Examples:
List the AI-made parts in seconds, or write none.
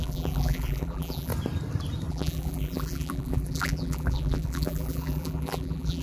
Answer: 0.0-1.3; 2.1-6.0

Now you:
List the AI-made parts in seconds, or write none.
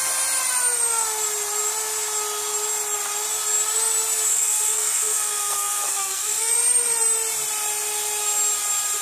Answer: 4.3-6.5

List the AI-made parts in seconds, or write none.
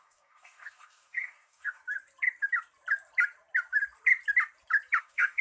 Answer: 0.0-1.8; 5.0-5.4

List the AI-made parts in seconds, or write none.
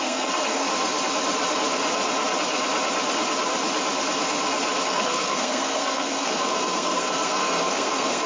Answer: 0.0-0.7; 4.9-8.3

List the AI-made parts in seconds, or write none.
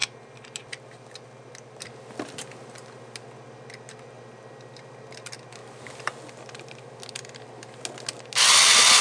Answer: none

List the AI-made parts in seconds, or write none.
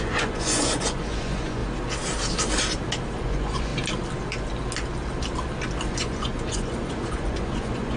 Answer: 0.0-1.6; 3.2-3.7; 5.9-8.0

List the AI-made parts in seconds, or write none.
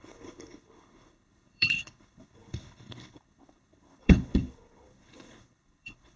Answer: 0.0-6.2